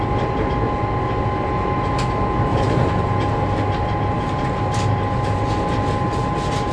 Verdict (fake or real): real